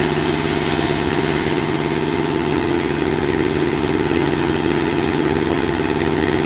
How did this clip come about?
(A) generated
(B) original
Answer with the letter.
A